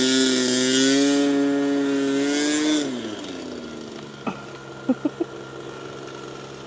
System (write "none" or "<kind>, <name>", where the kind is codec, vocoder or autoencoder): none